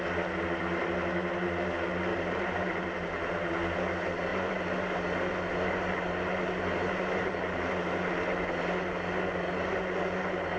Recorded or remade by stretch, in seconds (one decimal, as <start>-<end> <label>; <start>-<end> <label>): 0.0-2.1 recorded; 2.1-3.5 remade; 3.5-7.2 recorded; 7.2-7.7 remade; 7.7-10.6 recorded